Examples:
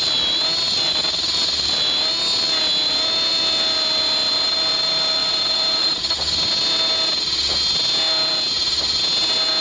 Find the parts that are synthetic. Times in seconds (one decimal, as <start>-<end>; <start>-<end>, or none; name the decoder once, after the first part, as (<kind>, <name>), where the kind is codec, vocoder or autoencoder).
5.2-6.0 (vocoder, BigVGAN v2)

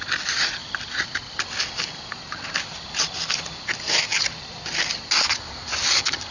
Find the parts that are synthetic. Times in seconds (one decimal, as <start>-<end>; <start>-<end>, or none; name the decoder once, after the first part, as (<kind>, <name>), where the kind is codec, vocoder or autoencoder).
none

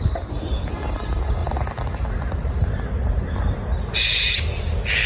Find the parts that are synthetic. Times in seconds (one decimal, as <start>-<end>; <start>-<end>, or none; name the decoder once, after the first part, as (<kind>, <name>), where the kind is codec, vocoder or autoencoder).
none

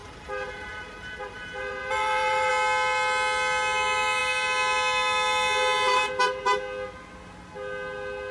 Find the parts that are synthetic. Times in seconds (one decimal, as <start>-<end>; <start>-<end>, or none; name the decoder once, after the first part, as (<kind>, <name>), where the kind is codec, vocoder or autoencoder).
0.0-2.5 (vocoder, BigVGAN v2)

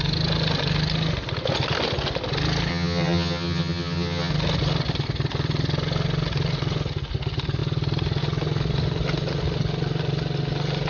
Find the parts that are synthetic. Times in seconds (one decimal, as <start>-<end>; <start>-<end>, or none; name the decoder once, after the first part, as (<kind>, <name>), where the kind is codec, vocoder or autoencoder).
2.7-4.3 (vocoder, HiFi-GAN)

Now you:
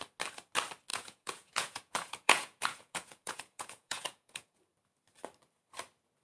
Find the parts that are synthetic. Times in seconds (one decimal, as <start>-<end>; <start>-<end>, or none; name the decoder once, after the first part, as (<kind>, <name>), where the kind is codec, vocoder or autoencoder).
0.9-4.6 (vocoder, Vocos)

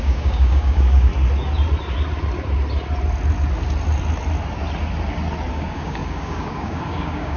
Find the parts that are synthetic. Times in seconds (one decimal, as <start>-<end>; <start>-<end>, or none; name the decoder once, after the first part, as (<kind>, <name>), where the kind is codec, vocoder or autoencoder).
0.0-1.1 (codec, DAC); 5.5-7.4

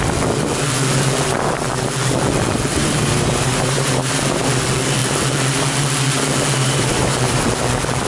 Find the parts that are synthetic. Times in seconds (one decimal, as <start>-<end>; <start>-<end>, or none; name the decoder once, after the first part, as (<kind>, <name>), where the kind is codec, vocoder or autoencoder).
2.8-4.1 (vocoder, BigVGAN v2); 6.6-7.4